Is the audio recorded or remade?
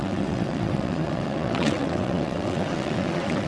remade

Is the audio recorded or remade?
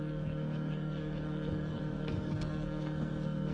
remade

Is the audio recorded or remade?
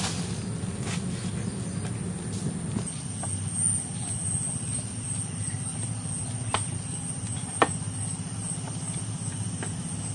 recorded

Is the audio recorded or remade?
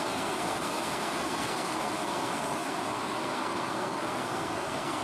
remade